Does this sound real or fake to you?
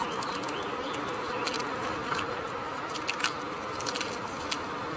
real